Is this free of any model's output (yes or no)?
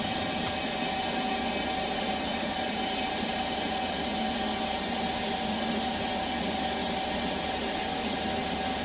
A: yes